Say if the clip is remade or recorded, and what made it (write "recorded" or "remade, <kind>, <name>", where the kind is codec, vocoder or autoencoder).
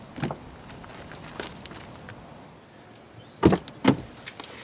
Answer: recorded